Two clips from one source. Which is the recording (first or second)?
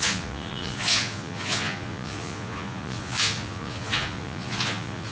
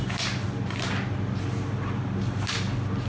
second